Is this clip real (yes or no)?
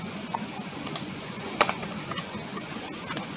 no